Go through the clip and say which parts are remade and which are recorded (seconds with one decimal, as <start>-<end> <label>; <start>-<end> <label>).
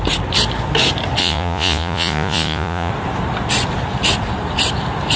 0.0-1.2 recorded; 1.2-2.9 remade; 2.9-5.2 recorded